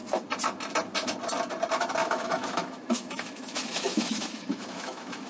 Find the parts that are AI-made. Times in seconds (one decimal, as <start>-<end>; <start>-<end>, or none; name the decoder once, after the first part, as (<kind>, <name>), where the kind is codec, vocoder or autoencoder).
2.0-5.3 (autoencoder, DAC-VAE)